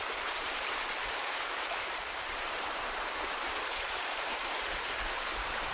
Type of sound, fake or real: fake